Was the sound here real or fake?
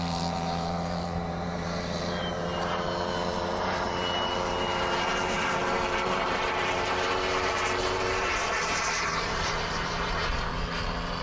fake